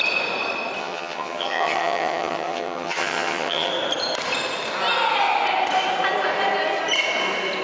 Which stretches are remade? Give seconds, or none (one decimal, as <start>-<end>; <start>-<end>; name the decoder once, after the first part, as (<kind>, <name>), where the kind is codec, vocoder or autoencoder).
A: 0.8-3.7 (vocoder, HiFi-GAN)